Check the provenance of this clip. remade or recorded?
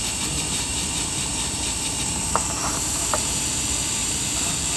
remade